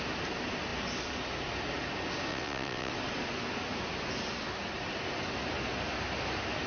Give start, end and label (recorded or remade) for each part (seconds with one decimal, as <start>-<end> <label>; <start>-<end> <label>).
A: 0.0-2.3 recorded; 2.3-2.9 remade; 2.9-6.7 recorded

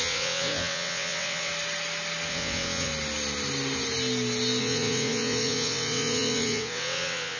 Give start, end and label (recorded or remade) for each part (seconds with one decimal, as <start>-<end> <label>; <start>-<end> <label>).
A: 0.0-1.5 remade; 1.5-2.3 recorded; 2.3-2.9 remade; 2.9-4.6 recorded; 4.6-7.4 remade

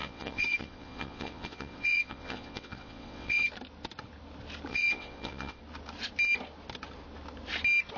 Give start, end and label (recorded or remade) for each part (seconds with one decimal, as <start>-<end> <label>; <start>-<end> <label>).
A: 0.0-3.5 remade; 3.5-4.7 recorded; 4.7-5.6 remade; 5.6-8.0 recorded

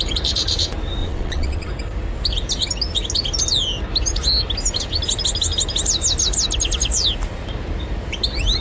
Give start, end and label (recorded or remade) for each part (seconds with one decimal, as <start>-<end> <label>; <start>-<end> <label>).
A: 0.0-1.0 recorded; 1.0-1.7 remade; 1.7-8.6 recorded

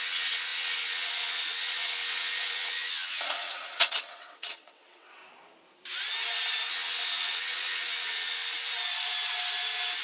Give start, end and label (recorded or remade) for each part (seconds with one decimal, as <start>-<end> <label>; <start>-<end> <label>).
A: 0.0-5.2 remade; 5.2-6.7 recorded; 6.7-8.4 remade; 8.4-10.0 recorded

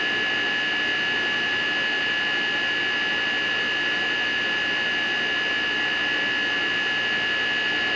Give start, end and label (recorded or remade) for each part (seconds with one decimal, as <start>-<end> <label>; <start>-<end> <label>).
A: 0.0-8.0 recorded

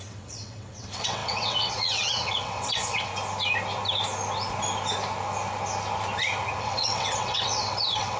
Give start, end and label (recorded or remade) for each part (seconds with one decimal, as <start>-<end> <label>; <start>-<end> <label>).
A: 0.0-3.1 remade; 3.1-6.6 recorded; 6.6-8.2 remade